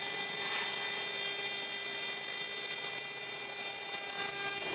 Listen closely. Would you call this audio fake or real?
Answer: real